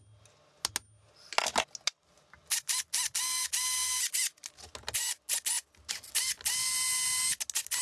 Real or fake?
real